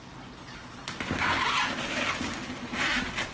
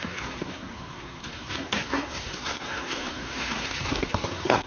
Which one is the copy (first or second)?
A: second